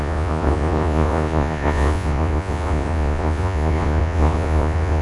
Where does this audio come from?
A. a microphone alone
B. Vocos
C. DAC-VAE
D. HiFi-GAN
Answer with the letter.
B